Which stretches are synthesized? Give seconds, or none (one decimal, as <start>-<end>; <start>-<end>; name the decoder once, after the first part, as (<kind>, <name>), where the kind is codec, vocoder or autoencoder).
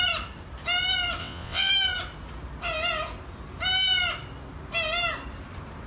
1.2-1.7 (vocoder, WaveNeXt)